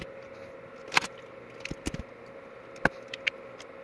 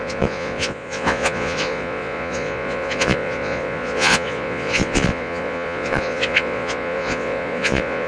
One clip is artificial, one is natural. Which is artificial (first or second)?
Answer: second